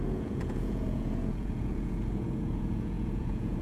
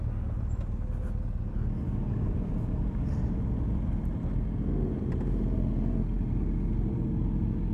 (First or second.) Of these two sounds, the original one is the second